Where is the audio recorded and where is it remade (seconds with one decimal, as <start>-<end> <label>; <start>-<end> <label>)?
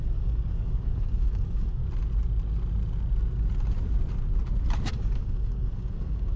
0.0-1.8 remade; 1.8-4.9 recorded; 4.9-6.4 remade